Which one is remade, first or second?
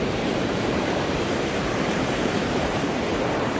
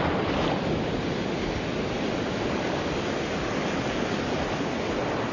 first